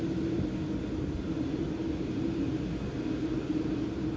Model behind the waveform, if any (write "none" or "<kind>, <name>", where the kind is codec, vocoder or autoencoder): none